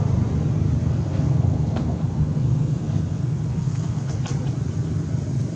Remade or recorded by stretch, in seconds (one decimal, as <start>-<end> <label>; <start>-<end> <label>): 0.0-0.8 recorded; 0.8-4.2 remade; 4.2-5.6 recorded